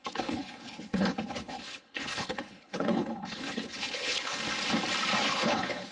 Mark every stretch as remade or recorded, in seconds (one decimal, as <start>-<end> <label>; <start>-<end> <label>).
0.0-4.4 remade; 4.4-5.2 recorded; 5.2-5.9 remade